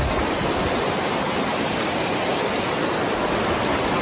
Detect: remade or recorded recorded